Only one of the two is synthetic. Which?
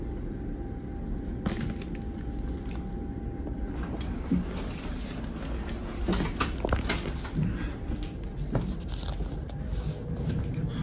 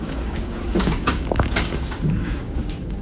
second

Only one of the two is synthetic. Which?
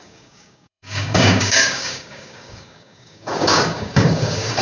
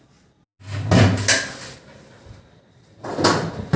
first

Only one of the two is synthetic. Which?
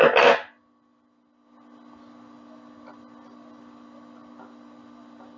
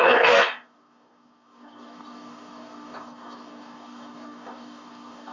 second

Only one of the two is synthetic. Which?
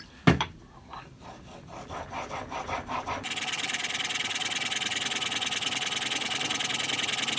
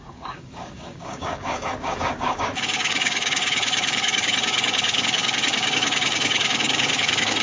second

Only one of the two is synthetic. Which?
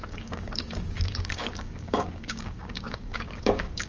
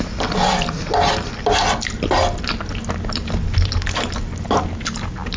first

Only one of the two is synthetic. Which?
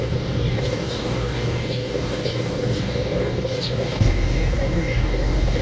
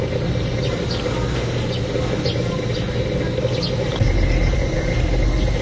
first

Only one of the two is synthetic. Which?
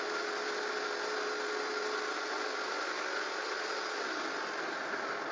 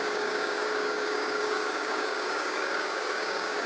second